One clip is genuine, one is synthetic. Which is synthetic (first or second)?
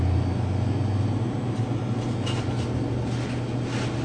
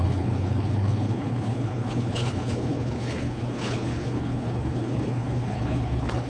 second